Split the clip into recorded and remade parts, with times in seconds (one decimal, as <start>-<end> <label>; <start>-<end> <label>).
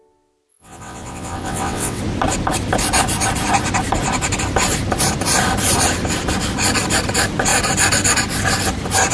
0.0-0.5 recorded; 0.5-2.0 remade; 2.0-9.1 recorded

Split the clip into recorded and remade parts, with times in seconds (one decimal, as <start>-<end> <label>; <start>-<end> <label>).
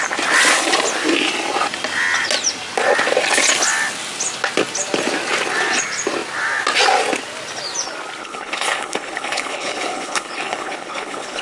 0.0-8.2 recorded; 8.2-11.4 remade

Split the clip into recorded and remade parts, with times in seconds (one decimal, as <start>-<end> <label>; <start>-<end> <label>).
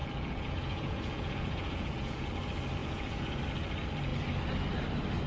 0.0-2.3 remade; 2.3-2.8 recorded; 2.8-3.4 remade; 3.4-5.3 recorded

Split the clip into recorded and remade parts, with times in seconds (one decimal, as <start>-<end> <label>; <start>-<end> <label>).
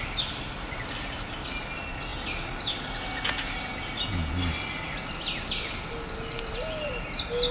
0.0-7.5 recorded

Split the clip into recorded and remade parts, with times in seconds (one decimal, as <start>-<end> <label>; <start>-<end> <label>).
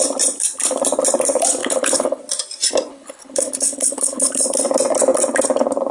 0.0-1.6 recorded; 1.6-2.2 remade; 2.2-2.9 recorded; 2.9-4.3 remade; 4.3-5.9 recorded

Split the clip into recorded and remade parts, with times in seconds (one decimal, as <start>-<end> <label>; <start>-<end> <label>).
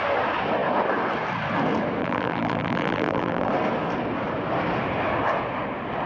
0.0-2.0 recorded; 2.0-3.5 remade; 3.5-6.1 recorded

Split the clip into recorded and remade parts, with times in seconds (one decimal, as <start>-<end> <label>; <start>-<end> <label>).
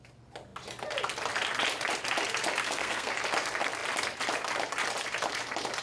0.0-2.6 recorded; 2.6-3.1 remade; 3.1-5.8 recorded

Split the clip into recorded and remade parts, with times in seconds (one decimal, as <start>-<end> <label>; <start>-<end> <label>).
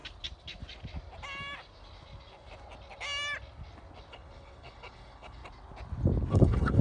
0.0-4.1 recorded; 4.1-5.4 remade; 5.4-6.3 recorded; 6.3-6.8 remade